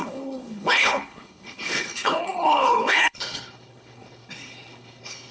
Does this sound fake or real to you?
fake